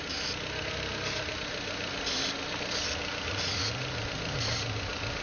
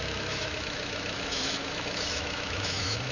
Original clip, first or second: first